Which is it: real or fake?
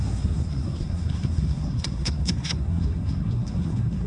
fake